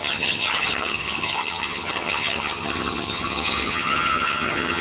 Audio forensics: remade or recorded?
remade